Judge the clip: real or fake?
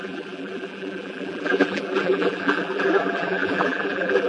fake